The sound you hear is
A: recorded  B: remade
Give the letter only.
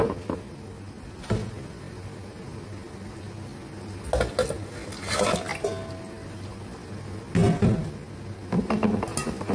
A